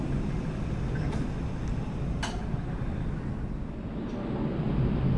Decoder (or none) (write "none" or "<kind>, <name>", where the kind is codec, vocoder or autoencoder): none